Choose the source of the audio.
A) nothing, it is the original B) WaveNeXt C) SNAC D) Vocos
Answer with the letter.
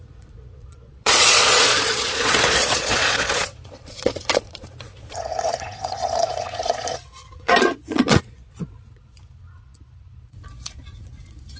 D